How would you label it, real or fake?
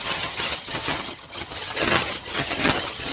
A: fake